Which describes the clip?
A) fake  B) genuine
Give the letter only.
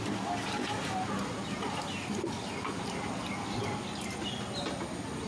B